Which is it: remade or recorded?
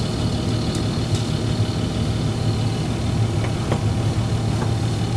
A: recorded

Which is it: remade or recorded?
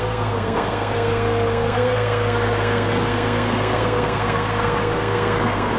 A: remade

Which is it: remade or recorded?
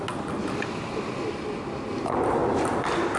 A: recorded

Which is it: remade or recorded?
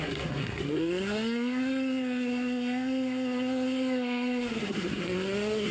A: remade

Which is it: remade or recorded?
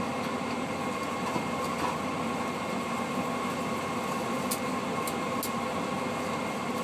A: recorded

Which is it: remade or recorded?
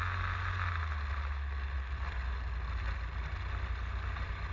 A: recorded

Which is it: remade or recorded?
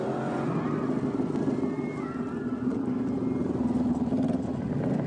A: recorded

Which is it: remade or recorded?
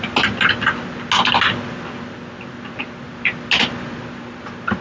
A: recorded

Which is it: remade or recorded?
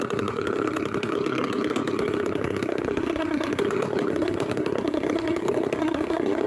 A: remade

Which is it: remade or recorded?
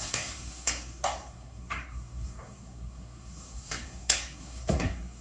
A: remade